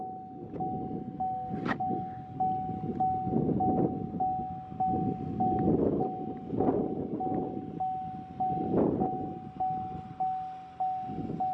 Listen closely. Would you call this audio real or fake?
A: real